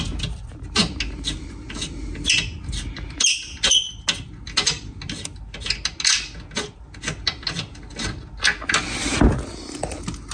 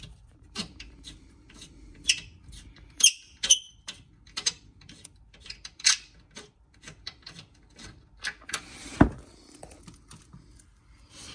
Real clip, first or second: first